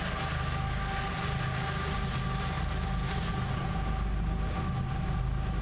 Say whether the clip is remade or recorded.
recorded